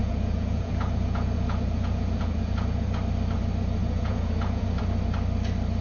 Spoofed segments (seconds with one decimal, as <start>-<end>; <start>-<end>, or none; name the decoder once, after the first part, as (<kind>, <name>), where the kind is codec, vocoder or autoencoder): 0.0-2.9 (vocoder, Vocos); 3.8-4.8